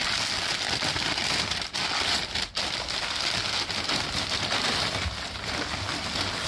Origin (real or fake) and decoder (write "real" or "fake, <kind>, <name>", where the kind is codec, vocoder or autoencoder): real